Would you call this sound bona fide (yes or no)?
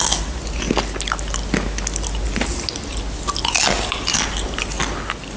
yes